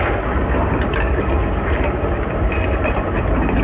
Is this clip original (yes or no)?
yes